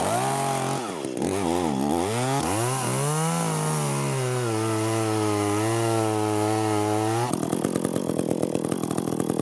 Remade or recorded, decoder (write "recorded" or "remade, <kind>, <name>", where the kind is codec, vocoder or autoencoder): recorded